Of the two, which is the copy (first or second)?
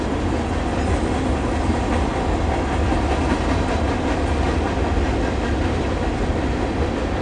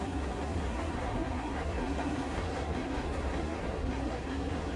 second